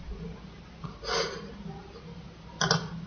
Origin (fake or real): real